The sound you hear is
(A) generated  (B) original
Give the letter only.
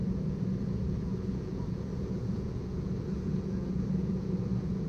A